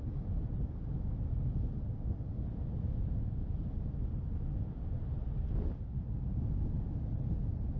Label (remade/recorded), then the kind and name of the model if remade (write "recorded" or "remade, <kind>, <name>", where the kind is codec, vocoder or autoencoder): recorded